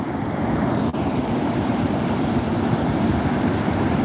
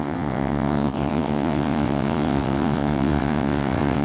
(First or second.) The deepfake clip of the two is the second